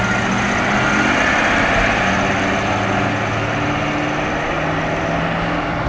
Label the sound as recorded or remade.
recorded